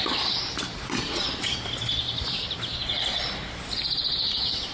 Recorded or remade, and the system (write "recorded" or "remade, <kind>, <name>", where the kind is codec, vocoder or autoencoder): remade, vocoder, BigVGAN v2